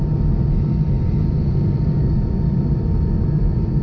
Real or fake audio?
real